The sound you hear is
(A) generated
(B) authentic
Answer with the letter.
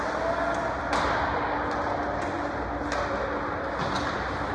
B